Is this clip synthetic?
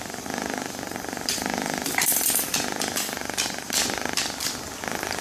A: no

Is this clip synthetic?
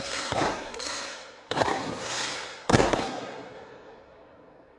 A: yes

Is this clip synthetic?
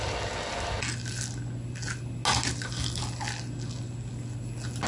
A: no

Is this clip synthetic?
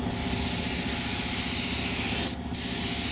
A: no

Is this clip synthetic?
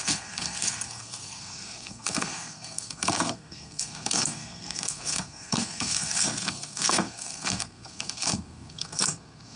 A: yes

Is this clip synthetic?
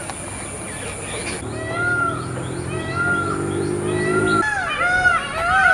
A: no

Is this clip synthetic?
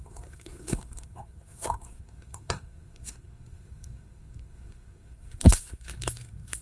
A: yes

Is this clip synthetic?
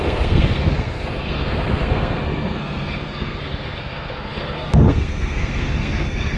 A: yes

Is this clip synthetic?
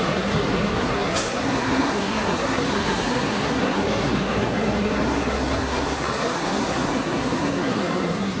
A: yes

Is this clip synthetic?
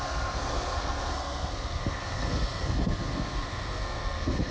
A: yes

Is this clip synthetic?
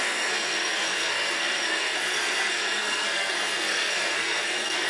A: yes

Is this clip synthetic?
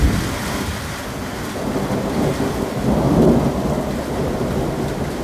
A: no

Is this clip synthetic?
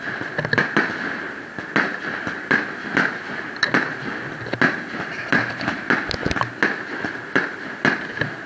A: no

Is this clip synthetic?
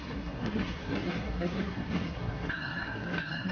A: yes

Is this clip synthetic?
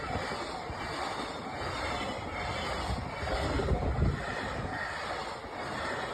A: no